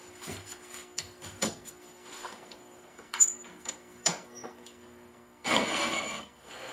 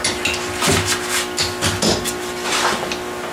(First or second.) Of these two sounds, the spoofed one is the first